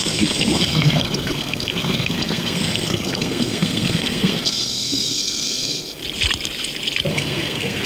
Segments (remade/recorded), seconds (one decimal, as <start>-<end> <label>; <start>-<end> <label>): 0.0-6.0 remade; 6.0-7.1 recorded; 7.1-7.9 remade